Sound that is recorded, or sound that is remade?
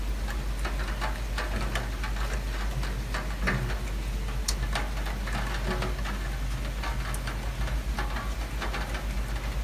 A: recorded